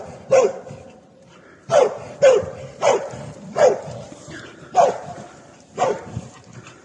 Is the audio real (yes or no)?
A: no